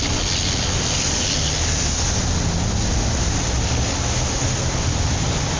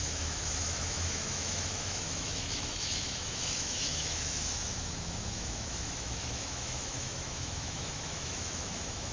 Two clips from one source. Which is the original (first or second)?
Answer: first